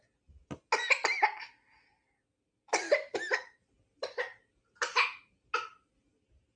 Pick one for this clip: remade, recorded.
recorded